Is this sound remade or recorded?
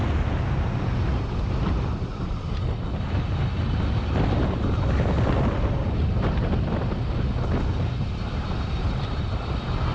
recorded